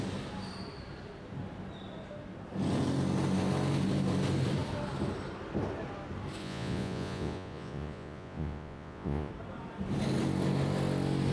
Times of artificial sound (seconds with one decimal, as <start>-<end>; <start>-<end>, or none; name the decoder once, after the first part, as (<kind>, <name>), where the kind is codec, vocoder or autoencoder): 6.4-9.3 (vocoder, Vocos)